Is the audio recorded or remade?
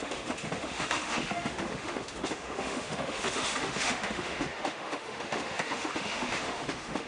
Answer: remade